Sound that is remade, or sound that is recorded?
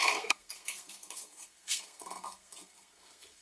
remade